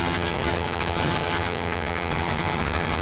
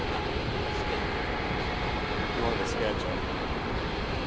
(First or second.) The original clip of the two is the second